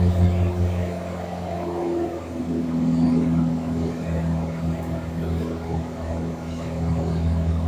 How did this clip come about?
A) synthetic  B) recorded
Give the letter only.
A